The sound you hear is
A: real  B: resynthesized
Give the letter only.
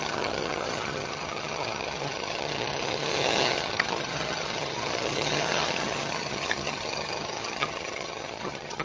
B